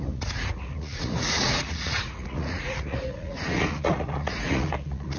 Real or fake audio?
fake